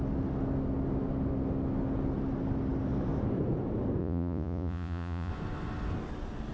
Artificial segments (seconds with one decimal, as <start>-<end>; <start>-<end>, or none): 4.0-5.3